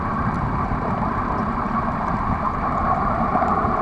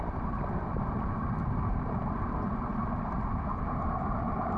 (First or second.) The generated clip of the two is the first